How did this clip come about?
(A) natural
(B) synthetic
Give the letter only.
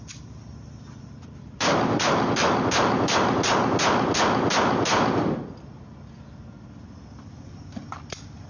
A